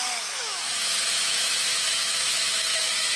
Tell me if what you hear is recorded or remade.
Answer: remade